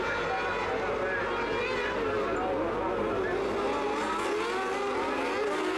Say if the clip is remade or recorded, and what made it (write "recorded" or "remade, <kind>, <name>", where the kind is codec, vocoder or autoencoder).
recorded